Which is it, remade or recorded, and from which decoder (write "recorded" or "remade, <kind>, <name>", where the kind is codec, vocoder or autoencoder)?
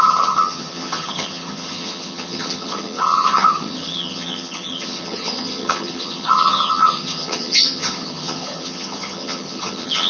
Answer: remade, vocoder, HiFi-GAN